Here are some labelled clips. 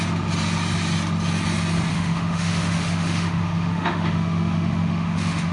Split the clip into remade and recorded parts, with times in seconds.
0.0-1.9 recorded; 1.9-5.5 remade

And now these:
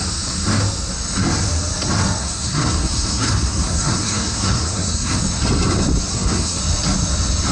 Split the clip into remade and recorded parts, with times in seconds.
0.0-2.2 recorded; 2.2-5.2 remade; 5.2-6.1 recorded; 6.1-6.6 remade; 6.6-7.5 recorded

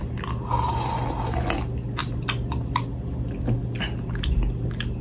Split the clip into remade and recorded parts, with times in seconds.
0.0-5.0 recorded

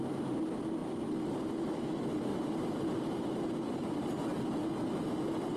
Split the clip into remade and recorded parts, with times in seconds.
0.0-2.3 recorded; 2.3-3.0 remade; 3.0-5.6 recorded

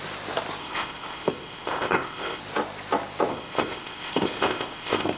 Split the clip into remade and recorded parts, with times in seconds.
0.0-0.6 recorded; 0.6-2.4 remade; 2.4-3.3 recorded; 3.3-5.2 remade

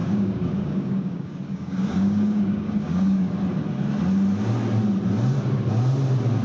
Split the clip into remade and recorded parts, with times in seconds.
0.0-3.3 remade; 3.3-6.4 recorded

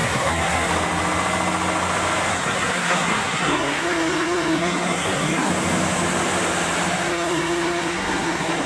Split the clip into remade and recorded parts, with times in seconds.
0.0-0.7 remade; 0.7-2.3 recorded; 2.3-5.5 remade; 5.5-7.1 recorded; 7.1-8.7 remade

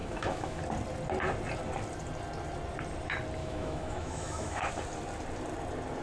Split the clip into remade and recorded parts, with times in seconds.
0.0-0.6 remade; 0.6-3.4 recorded; 3.4-4.7 remade; 4.7-6.0 recorded